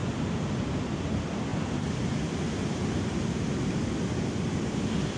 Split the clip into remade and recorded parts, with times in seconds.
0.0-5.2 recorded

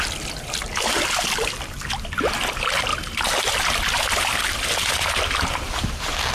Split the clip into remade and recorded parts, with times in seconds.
0.0-6.3 recorded

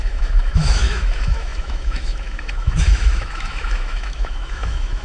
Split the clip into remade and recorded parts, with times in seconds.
0.0-5.0 remade

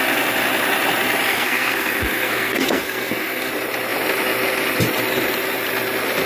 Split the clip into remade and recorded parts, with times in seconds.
0.0-1.3 recorded; 1.3-3.5 remade; 3.5-6.3 recorded

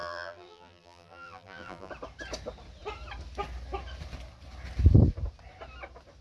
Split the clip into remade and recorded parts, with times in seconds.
0.0-1.9 remade; 1.9-6.2 recorded

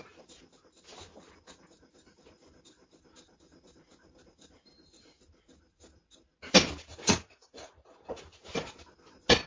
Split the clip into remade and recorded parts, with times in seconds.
0.0-6.9 recorded; 6.9-8.5 remade; 8.5-9.5 recorded